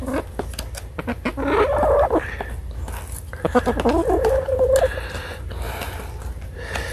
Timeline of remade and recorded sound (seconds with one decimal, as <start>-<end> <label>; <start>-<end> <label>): 0.0-6.9 recorded